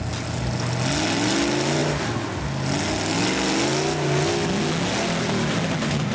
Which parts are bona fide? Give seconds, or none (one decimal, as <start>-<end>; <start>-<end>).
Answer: 0.0-6.1